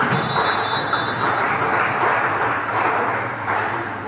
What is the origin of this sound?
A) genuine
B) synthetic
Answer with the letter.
A